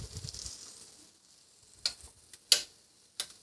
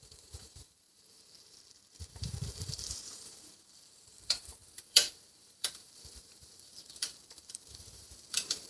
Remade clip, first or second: second